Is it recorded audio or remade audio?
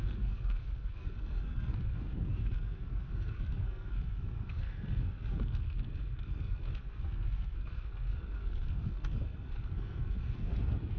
remade